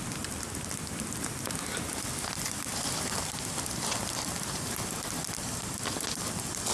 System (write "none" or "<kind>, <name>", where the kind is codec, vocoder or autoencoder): none